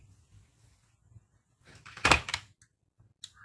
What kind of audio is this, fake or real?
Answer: real